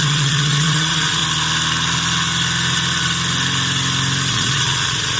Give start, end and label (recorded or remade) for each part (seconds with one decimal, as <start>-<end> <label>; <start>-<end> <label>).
0.0-1.2 remade; 1.2-4.3 recorded; 4.3-5.2 remade